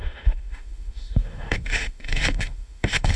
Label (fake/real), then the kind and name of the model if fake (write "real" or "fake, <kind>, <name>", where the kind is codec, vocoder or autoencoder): fake, autoencoder, DAC-VAE